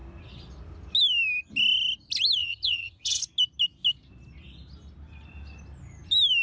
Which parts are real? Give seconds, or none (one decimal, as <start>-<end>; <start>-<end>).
0.0-2.4; 3.2-6.4

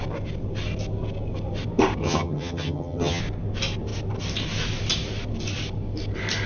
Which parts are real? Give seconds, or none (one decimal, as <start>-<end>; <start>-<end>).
0.0-2.0; 3.2-6.5

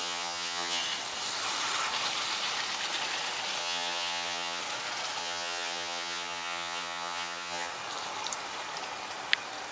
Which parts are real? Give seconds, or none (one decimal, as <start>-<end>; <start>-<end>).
0.8-3.6; 4.6-5.2; 7.7-9.7

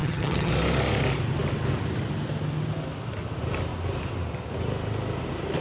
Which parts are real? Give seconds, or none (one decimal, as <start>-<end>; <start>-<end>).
0.5-5.6

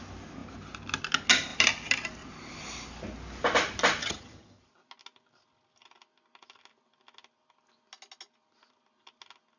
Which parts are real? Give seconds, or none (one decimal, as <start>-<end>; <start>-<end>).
0.0-4.0; 4.6-9.6

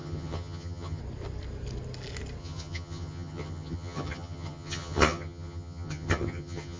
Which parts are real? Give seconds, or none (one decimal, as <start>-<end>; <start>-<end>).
1.0-2.4

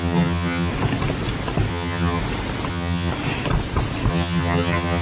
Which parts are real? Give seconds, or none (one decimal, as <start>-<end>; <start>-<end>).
0.7-1.7; 2.2-2.7; 3.1-4.1

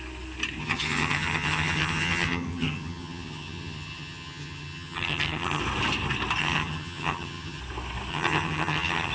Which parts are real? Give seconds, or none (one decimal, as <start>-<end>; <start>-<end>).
0.0-0.6; 5.6-6.4; 7.6-8.1